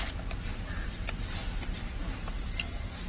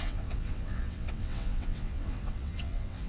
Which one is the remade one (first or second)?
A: second